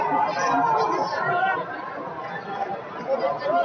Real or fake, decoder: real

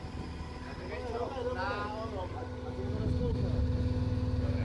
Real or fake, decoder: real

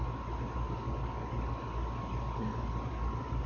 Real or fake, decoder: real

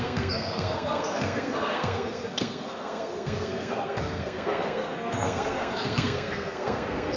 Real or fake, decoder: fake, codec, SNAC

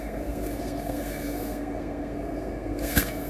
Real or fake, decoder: fake, codec, SNAC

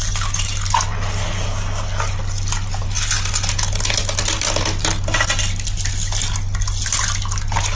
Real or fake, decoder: real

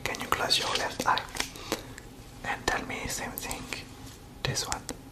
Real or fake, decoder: fake, vocoder, BigVGAN v2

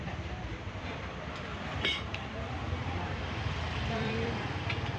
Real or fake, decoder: fake, vocoder, BigVGAN v2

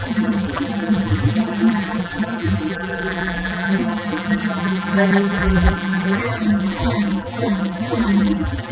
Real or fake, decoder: fake, vocoder, BigVGAN v2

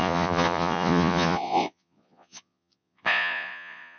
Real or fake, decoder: fake, vocoder, Vocos